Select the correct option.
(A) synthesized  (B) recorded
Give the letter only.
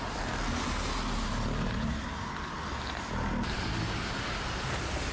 B